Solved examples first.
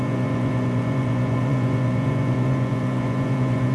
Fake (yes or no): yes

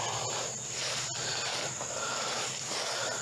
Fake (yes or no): no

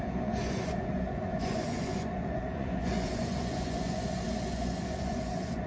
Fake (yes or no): yes